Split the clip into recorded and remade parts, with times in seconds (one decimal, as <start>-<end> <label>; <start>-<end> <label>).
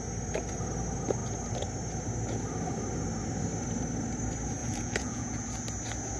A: 0.0-4.6 recorded; 4.6-5.4 remade; 5.4-6.2 recorded